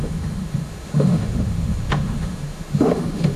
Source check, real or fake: fake